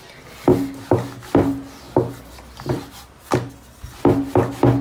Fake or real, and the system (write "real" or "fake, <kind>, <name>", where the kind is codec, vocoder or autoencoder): real